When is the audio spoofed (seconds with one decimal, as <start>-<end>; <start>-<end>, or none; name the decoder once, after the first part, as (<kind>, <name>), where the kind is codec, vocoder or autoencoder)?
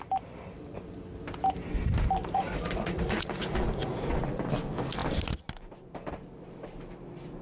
2.2-4.2 (vocoder, Vocos)